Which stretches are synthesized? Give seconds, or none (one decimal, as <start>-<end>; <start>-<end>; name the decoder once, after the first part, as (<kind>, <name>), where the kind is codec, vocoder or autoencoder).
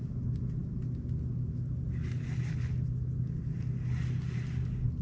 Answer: none